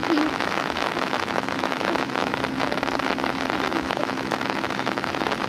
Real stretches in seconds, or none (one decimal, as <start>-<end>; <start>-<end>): 2.4-3.7; 5.1-5.5